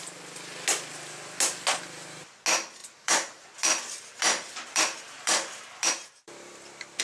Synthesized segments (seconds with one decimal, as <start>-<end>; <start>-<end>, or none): 2.8-7.0